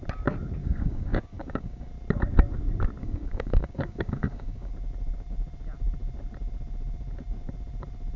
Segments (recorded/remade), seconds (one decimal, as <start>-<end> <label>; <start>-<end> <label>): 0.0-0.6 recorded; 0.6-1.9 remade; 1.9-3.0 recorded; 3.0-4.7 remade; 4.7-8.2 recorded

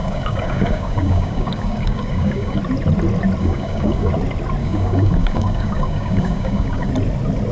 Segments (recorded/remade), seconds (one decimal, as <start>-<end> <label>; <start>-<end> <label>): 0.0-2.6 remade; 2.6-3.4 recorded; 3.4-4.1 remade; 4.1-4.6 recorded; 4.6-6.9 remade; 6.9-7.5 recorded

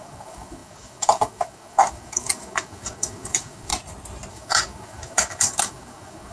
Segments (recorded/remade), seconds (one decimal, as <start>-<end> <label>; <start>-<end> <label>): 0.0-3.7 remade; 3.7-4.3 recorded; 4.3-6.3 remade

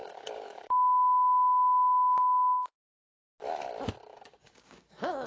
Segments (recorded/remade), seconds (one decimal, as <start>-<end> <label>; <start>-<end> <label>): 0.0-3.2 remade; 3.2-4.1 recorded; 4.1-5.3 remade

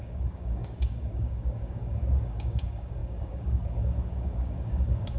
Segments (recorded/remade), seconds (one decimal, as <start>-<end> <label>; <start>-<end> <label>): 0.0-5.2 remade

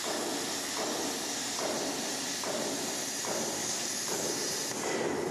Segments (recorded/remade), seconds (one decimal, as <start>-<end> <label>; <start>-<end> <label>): 0.0-3.6 recorded; 3.6-4.3 remade; 4.3-5.3 recorded

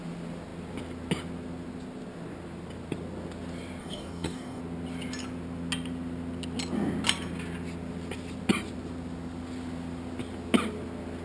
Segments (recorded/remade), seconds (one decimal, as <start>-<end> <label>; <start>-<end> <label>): 0.0-3.8 recorded; 3.8-4.6 remade; 4.6-11.2 recorded